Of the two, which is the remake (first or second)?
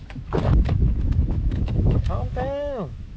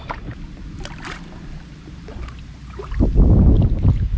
first